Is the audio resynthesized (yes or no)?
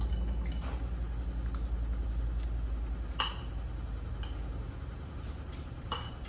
no